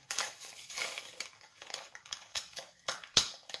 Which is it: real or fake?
fake